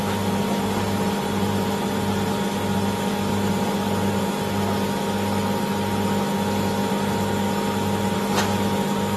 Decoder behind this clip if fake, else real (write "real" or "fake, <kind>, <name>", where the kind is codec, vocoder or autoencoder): real